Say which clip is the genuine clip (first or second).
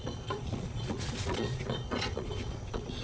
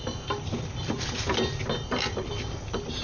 second